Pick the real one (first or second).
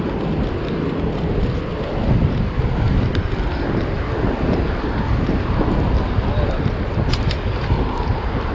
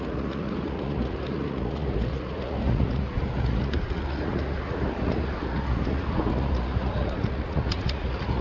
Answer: first